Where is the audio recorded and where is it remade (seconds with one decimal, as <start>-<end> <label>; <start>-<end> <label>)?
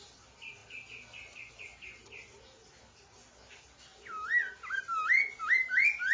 0.0-6.1 recorded